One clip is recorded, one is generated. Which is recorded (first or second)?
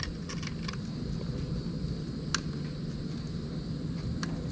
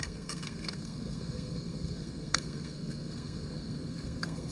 first